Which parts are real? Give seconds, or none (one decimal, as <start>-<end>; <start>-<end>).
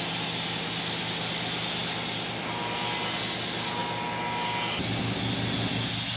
0.0-6.2